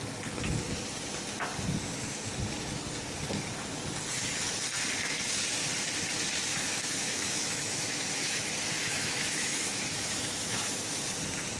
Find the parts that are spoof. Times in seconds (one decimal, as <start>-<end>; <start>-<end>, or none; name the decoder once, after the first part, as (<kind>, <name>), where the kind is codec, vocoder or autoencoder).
6.5-8.4 (autoencoder, DAC-VAE); 8.8-11.0